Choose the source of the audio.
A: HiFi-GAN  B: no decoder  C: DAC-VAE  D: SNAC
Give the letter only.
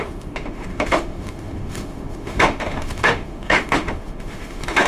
C